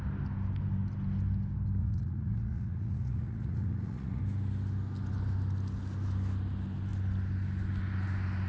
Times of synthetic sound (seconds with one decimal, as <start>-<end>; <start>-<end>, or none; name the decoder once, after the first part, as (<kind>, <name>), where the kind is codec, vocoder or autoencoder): 1.8-4.2 (vocoder, Vocos)